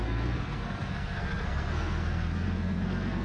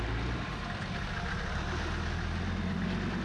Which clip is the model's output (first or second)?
first